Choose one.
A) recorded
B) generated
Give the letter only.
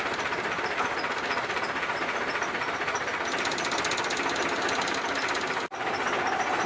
A